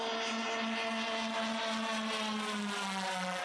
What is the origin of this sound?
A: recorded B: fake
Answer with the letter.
A